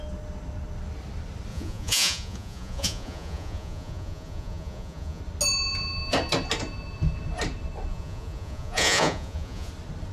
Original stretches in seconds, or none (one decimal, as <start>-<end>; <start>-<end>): 0.0-1.5; 5.2-7.9; 9.7-10.1